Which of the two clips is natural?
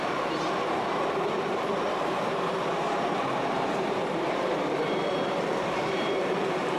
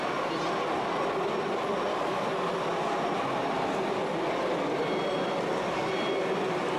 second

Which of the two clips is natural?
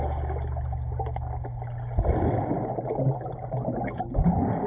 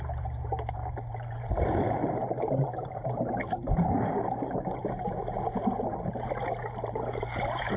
first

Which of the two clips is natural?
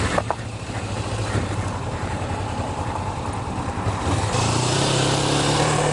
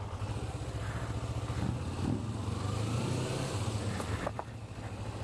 second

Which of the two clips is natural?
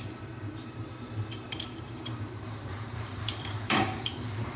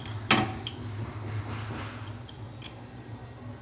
second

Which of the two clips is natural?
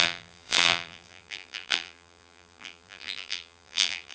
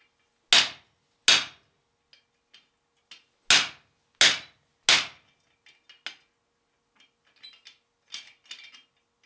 second